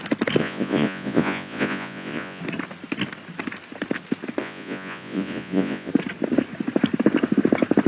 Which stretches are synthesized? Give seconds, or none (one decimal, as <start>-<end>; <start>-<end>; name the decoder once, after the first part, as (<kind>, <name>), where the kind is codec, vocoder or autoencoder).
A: 0.4-2.4 (vocoder, Vocos); 4.4-5.9